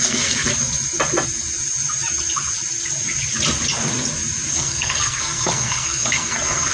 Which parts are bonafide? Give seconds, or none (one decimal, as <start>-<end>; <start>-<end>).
0.5-4.5